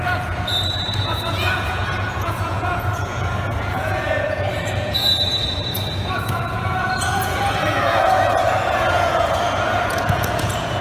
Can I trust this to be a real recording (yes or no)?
no